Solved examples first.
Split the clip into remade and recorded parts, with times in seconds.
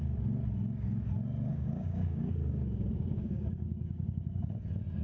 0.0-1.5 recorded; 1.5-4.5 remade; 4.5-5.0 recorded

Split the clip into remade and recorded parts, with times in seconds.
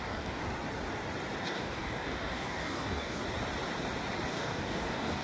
0.0-0.4 remade; 0.4-1.4 recorded; 1.4-3.2 remade; 3.2-4.3 recorded; 4.3-5.2 remade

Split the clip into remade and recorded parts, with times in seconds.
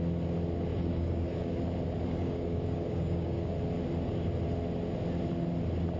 0.0-0.7 recorded; 0.7-1.5 remade; 1.5-2.2 recorded; 2.2-3.5 remade; 3.5-6.0 recorded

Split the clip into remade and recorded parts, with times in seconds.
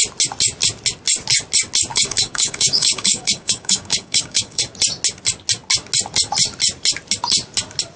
0.0-1.9 recorded; 1.9-4.6 remade; 4.6-8.0 recorded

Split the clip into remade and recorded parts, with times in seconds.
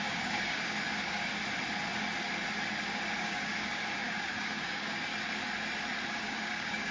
0.0-1.3 remade; 1.3-3.2 recorded; 3.2-5.1 remade; 5.1-6.1 recorded; 6.1-6.9 remade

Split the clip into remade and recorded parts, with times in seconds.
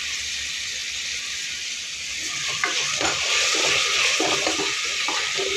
0.0-5.6 recorded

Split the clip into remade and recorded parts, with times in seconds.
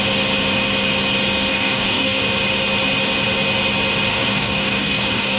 0.0-1.5 recorded; 1.5-2.2 remade; 2.2-4.1 recorded; 4.1-5.4 remade